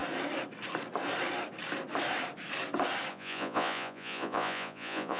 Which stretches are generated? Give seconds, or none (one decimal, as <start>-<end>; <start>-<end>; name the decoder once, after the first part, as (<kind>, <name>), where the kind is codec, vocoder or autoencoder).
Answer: 3.1-5.2 (vocoder, Vocos)